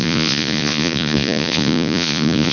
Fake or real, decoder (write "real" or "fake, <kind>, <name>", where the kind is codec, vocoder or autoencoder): fake, vocoder, Vocos